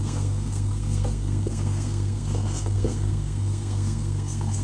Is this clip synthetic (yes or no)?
yes